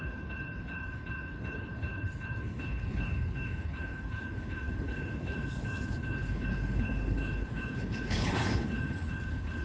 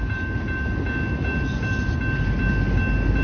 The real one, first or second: second